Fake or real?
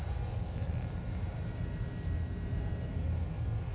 real